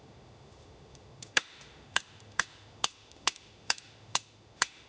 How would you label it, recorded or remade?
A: remade